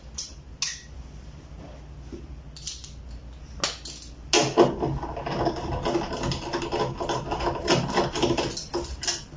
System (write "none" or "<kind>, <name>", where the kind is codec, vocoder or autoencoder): none